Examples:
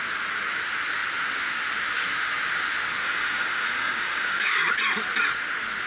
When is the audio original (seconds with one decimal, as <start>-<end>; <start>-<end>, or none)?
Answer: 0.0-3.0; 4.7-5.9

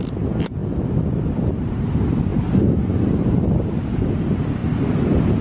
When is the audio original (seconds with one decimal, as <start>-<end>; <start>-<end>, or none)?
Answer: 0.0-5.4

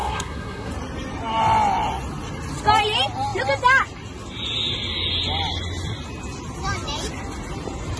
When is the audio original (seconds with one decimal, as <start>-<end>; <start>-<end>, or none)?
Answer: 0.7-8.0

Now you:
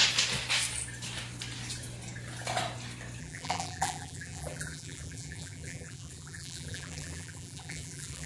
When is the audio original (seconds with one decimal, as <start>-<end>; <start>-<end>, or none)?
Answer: 0.0-3.2